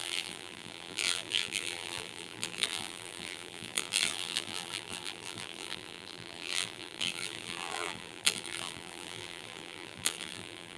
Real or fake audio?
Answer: fake